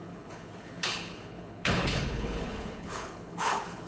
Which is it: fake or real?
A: fake